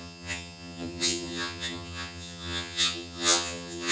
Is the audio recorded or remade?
remade